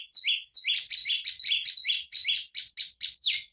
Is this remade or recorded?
recorded